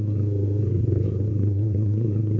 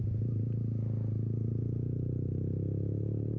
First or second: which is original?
second